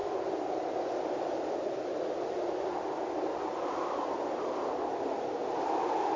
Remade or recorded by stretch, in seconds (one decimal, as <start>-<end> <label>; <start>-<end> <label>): 0.0-3.5 recorded; 3.5-4.0 remade; 4.0-6.2 recorded